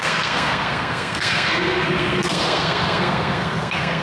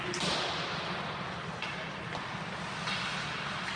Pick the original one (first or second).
second